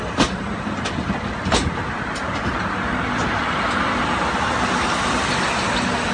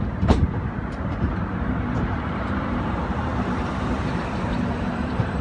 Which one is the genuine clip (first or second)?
first